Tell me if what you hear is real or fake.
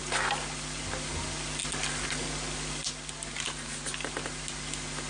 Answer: real